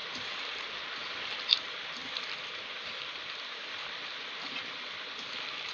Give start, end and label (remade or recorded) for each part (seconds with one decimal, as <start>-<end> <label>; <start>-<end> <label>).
0.0-5.7 recorded

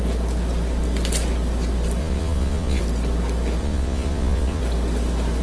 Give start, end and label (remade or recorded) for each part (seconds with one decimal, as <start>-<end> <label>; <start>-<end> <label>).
0.0-2.0 recorded; 2.0-2.8 remade; 2.8-3.6 recorded; 3.6-4.6 remade; 4.6-5.4 recorded

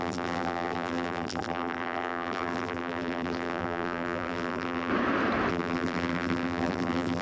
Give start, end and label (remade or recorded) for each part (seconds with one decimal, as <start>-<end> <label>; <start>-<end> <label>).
0.0-4.9 remade; 4.9-5.5 recorded; 5.5-7.2 remade

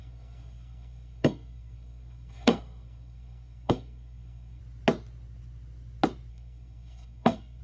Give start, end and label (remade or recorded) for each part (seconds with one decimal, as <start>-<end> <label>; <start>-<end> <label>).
0.0-4.6 remade; 4.6-6.3 recorded; 6.3-7.6 remade

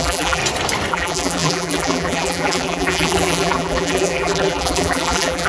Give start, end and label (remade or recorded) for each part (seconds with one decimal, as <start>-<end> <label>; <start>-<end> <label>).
0.0-0.4 remade; 0.4-0.9 recorded; 0.9-5.5 remade